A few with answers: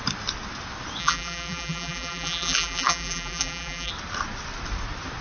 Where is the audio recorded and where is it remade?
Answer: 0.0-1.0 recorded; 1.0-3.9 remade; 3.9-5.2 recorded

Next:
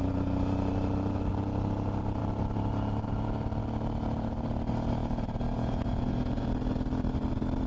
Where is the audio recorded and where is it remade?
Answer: 0.0-5.0 recorded; 5.0-6.5 remade; 6.5-7.7 recorded

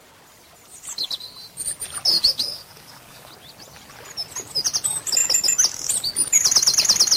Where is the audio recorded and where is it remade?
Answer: 0.0-2.1 recorded; 2.1-3.3 remade; 3.3-7.2 recorded

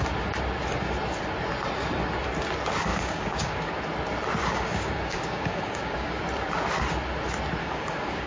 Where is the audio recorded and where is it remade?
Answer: 0.0-2.9 recorded; 2.9-3.7 remade; 3.7-4.4 recorded; 4.4-6.2 remade; 6.2-7.6 recorded; 7.6-8.3 remade